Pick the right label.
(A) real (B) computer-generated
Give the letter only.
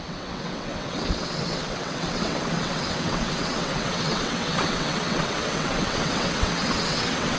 B